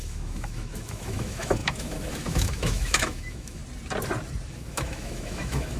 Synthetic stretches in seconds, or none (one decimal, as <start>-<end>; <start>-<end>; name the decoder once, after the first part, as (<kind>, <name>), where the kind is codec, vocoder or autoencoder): 0.0-3.6 (autoencoder, DAC-VAE); 4.5-5.8